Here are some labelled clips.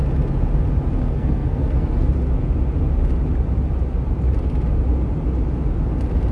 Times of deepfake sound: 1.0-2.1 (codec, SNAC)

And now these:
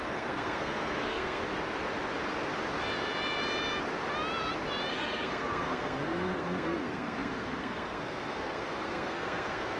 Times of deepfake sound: 0.0-1.4 (codec, SNAC); 4.9-9.8

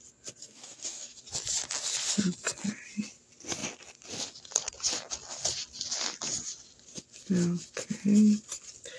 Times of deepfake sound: 0.4-1.2 (codec, DAC)

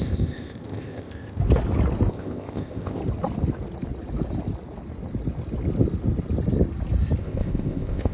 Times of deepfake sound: 0.0-1.4 (codec, ZipCodec); 2.1-3.0; 7.2-8.1